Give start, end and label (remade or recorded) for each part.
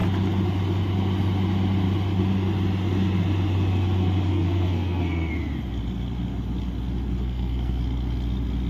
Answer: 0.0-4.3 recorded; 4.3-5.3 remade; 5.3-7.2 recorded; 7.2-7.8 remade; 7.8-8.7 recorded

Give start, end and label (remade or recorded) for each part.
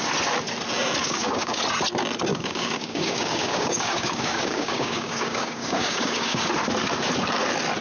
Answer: 0.0-1.0 recorded; 1.0-1.6 remade; 1.6-2.3 recorded; 2.3-6.5 remade; 6.5-7.8 recorded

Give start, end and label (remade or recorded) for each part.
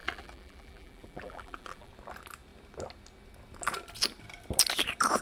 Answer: 0.0-1.9 remade; 1.9-5.2 recorded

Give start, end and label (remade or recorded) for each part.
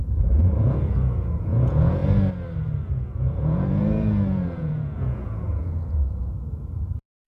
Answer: 0.0-2.0 remade; 2.0-2.6 recorded; 2.6-7.3 remade